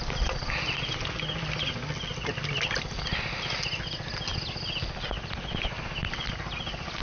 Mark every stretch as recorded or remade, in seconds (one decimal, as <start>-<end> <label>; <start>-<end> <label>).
0.0-7.0 recorded